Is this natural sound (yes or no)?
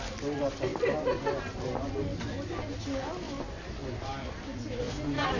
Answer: yes